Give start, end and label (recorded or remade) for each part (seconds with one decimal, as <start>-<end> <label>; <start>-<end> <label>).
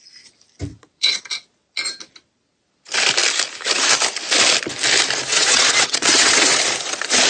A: 0.0-0.7 recorded; 0.7-1.2 remade; 1.2-5.3 recorded; 5.3-6.6 remade; 6.6-7.3 recorded